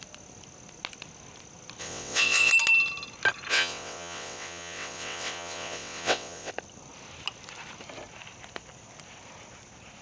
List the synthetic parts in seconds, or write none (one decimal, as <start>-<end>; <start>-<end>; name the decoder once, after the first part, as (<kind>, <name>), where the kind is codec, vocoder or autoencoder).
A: 1.8-2.5 (vocoder, WaveNeXt); 3.5-6.5